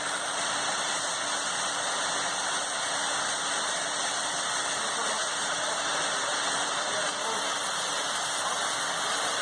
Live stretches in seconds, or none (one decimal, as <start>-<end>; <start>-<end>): 0.0-9.4